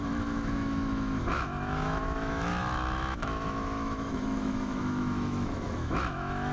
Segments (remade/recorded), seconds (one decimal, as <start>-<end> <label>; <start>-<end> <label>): 0.0-6.5 remade